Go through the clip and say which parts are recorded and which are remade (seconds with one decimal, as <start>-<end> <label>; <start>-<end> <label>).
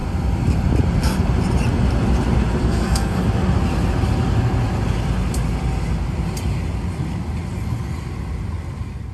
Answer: 0.0-2.6 recorded; 2.6-3.2 remade; 3.2-9.1 recorded